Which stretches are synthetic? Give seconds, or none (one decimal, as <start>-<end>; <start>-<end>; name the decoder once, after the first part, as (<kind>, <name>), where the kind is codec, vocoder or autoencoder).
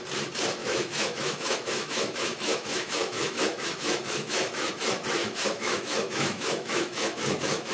0.6-4.7 (autoencoder, DAC-VAE); 5.2-7.7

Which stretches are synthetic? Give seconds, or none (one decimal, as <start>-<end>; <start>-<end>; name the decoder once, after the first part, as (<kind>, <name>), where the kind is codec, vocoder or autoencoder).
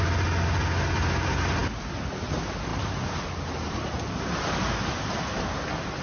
none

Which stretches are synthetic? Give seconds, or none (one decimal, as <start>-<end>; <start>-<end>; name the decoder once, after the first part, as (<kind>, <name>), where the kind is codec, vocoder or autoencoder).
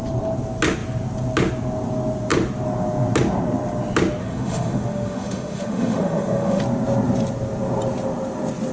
4.2-6.6 (autoencoder, DAC-VAE)